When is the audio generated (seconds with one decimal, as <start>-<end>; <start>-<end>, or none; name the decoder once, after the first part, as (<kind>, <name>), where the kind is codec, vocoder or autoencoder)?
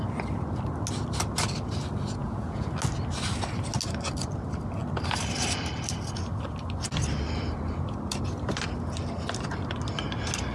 2.2-2.7 (vocoder, Vocos)